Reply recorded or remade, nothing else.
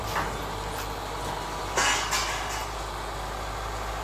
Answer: recorded